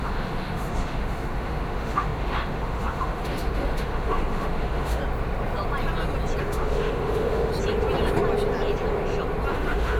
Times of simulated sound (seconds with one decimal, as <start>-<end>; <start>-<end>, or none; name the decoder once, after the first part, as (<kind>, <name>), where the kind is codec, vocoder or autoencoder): 0.0-5.0 (autoencoder, DAC-VAE); 6.4-7.5; 9.5-10.0